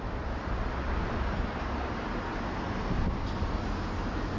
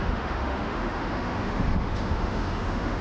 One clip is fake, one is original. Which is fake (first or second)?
second